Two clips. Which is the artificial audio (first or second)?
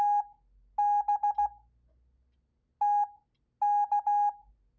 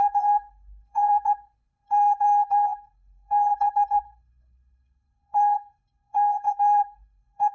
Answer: second